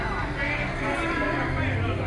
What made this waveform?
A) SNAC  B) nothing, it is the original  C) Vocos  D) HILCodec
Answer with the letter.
B